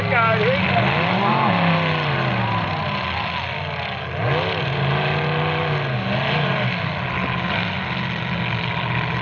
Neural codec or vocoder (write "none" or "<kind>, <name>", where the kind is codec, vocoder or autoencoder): none